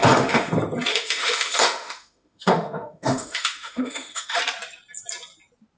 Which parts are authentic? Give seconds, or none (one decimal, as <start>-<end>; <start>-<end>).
0.5-0.9; 4.4-5.8

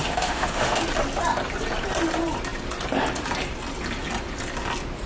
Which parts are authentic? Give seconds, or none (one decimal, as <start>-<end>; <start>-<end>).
0.8-5.1

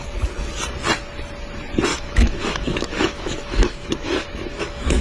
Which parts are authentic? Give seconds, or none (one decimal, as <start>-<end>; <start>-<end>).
0.0-1.9

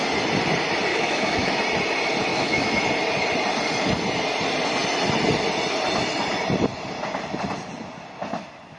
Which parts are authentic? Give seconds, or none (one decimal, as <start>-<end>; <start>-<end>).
0.0-0.9; 1.6-2.3; 2.8-8.8

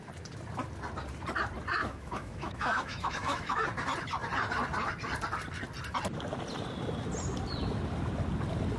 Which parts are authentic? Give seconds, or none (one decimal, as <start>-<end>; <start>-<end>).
0.0-1.8; 3.6-8.8

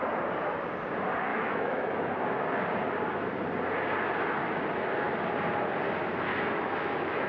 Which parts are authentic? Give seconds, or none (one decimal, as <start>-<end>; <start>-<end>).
0.0-1.3; 2.1-6.3

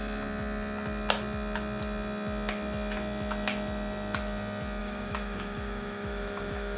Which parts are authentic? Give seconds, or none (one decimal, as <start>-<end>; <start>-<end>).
0.0-4.8

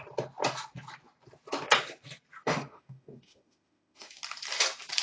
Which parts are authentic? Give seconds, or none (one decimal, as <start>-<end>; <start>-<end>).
0.0-2.4; 4.2-5.0